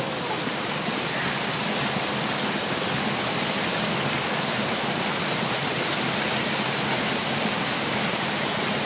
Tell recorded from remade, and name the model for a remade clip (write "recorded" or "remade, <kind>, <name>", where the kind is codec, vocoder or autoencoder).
recorded